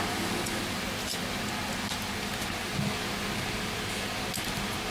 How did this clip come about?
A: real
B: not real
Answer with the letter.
A